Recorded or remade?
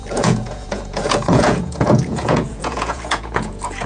remade